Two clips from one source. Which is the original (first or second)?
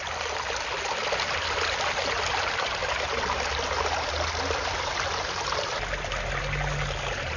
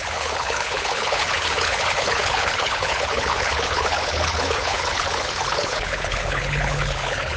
first